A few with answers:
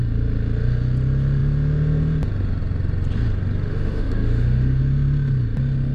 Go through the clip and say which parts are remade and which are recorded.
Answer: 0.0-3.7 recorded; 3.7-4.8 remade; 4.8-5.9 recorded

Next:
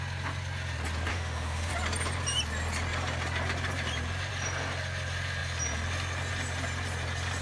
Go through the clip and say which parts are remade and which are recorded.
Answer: 0.0-1.1 recorded; 1.1-1.7 remade; 1.7-7.4 recorded

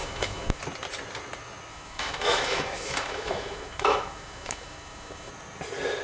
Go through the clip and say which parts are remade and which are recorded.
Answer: 0.0-0.6 remade; 0.6-1.7 recorded; 1.7-5.3 remade; 5.3-6.0 recorded